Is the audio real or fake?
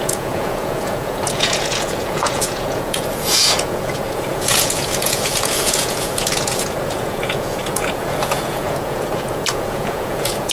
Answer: fake